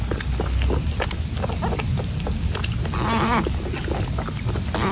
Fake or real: real